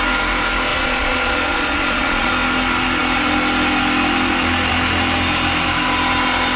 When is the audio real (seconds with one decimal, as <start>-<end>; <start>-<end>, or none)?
0.0-0.7; 2.3-6.6